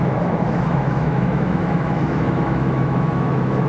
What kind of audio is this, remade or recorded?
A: remade